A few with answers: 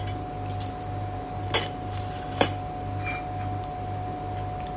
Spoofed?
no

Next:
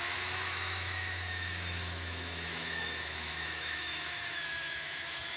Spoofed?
yes